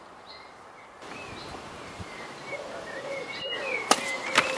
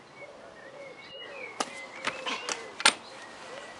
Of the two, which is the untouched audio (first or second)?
second